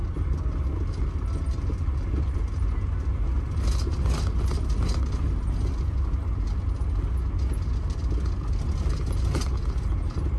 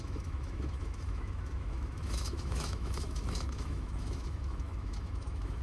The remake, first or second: second